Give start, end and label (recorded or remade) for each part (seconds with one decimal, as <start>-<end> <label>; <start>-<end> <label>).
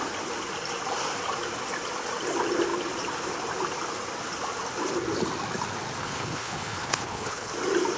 0.0-6.0 recorded; 6.0-7.5 remade; 7.5-8.0 recorded